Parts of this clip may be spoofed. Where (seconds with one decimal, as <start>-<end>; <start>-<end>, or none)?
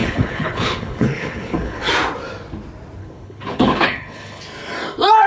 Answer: 0.0-1.9; 3.0-4.4